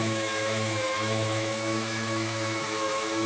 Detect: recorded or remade remade